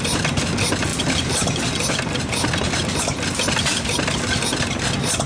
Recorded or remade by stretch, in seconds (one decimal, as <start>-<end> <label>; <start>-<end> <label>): 0.0-5.3 recorded

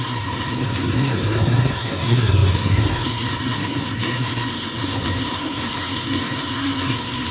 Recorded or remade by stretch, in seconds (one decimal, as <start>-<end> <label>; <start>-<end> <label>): 0.0-7.3 remade

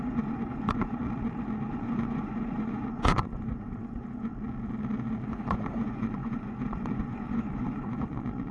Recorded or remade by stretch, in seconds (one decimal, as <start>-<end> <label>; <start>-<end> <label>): 0.0-1.0 remade; 1.0-1.7 recorded; 1.7-4.3 remade; 4.3-5.3 recorded; 5.3-8.5 remade

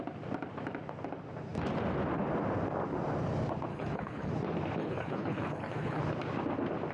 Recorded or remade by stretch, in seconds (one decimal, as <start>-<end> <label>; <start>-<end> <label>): 0.0-3.7 recorded; 3.7-4.3 remade; 4.3-4.8 recorded; 4.8-6.0 remade; 6.0-6.9 recorded

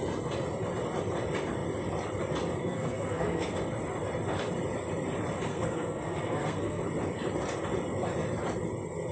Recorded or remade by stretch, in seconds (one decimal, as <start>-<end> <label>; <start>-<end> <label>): 0.0-2.6 recorded; 2.6-3.6 remade; 3.6-5.5 recorded; 5.5-6.8 remade; 6.8-9.1 recorded

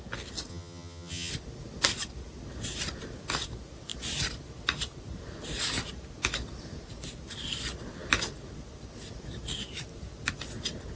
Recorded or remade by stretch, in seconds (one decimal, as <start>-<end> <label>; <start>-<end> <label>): 0.0-0.5 recorded; 0.5-1.3 remade; 1.3-11.0 recorded

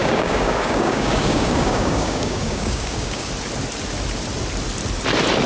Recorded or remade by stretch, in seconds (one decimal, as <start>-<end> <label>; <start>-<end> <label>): 0.0-3.3 remade; 3.3-5.5 recorded